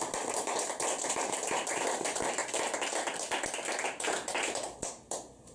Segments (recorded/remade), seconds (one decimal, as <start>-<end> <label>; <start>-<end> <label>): 0.0-0.5 remade; 0.5-1.1 recorded; 1.1-2.4 remade; 2.4-4.9 recorded; 4.9-5.5 remade